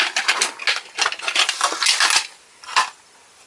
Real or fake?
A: real